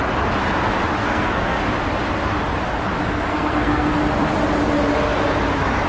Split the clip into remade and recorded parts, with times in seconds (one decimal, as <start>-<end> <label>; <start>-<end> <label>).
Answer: 0.0-1.0 recorded; 1.0-1.6 remade; 1.6-3.3 recorded; 3.3-3.9 remade; 3.9-5.9 recorded